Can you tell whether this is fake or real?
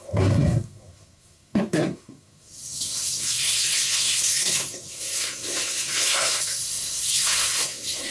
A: fake